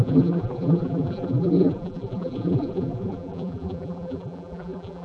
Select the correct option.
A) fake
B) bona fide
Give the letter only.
A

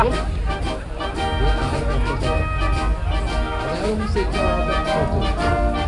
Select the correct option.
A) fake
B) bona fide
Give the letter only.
B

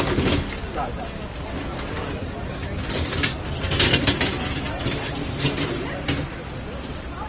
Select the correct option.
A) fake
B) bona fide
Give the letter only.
B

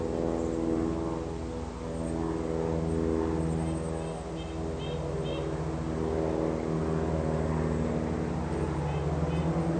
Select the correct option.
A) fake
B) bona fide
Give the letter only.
B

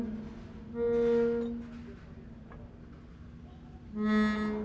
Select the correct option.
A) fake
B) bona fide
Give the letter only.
B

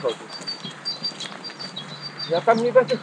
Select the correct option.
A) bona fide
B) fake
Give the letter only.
A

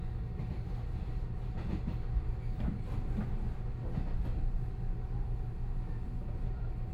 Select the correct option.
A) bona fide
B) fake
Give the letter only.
A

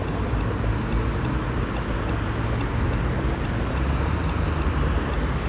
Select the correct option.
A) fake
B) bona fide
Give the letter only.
B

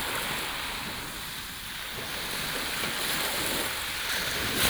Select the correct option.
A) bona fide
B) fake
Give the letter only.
A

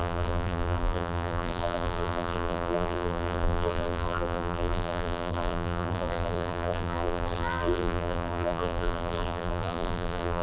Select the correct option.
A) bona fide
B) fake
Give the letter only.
B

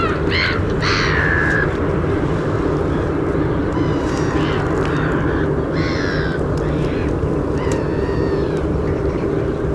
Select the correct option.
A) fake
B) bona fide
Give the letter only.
A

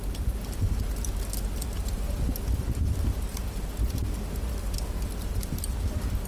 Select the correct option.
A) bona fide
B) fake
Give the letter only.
A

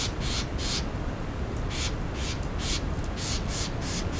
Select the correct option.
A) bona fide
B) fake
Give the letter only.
A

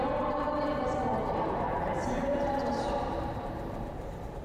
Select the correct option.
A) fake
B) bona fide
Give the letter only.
A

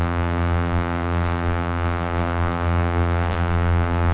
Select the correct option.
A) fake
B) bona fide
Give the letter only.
A